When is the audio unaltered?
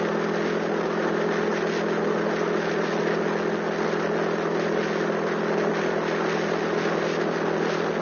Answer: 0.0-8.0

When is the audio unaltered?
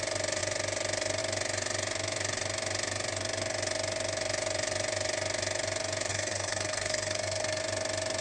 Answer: 0.0-6.1; 7.6-8.2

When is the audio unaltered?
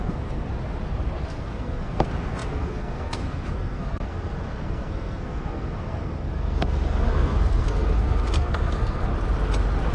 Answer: 0.4-1.2; 9.1-9.9